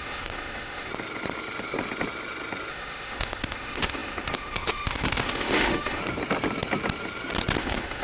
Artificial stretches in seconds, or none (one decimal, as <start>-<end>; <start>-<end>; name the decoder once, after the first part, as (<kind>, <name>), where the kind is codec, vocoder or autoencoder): 0.0-0.9 (autoencoder, DAC-VAE); 2.7-6.0; 7.6-8.0